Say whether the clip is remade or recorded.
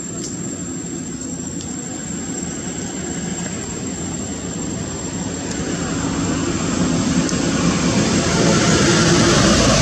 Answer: remade